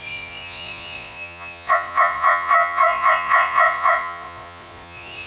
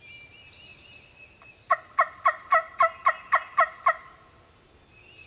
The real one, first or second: second